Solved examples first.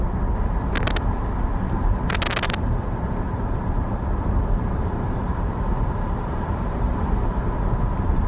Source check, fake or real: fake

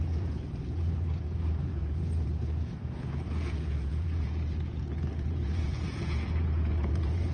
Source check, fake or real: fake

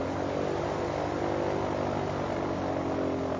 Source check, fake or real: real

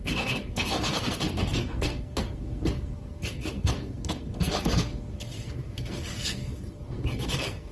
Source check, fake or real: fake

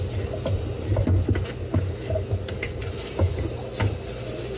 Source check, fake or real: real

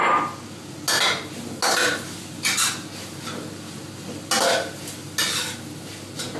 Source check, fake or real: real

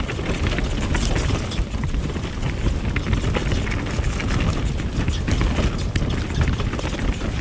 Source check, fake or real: real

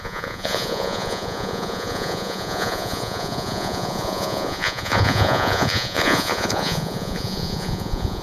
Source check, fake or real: fake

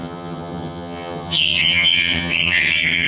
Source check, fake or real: fake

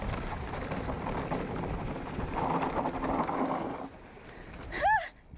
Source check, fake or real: real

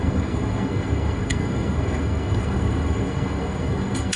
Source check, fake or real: fake